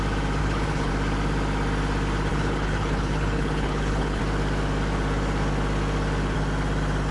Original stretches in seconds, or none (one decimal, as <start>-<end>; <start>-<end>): 0.0-0.4; 0.9-2.3; 4.2-7.1

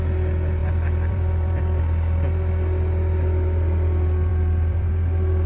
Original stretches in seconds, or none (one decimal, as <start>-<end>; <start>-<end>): 0.0-0.6; 1.8-4.3; 4.9-5.5